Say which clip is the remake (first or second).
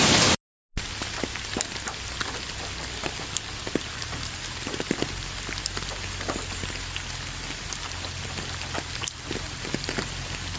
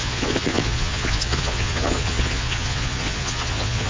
second